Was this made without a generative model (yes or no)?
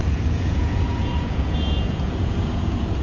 no